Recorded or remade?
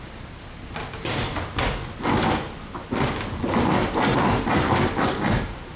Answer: recorded